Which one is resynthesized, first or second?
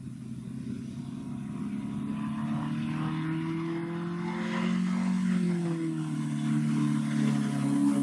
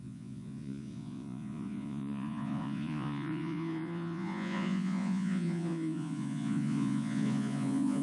second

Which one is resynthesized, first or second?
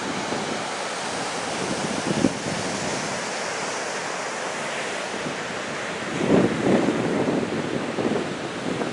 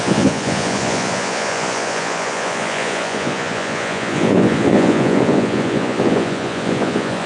second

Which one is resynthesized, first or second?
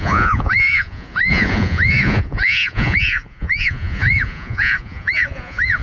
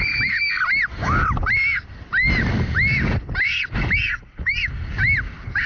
first